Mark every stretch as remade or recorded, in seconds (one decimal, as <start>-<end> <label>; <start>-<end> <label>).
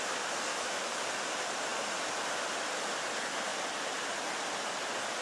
0.0-0.5 recorded; 0.5-1.0 remade; 1.0-5.2 recorded